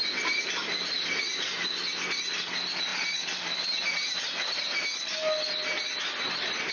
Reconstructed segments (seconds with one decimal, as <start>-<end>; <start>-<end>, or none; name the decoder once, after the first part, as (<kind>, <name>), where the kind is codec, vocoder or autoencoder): 2.9-4.5 (vocoder, BigVGAN v2)